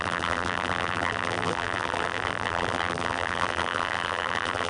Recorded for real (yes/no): no